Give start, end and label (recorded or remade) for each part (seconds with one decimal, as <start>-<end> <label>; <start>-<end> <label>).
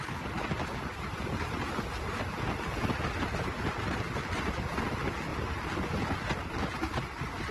0.0-7.5 recorded